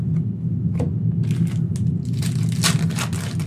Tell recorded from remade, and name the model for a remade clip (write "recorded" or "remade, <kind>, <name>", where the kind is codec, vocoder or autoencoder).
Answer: recorded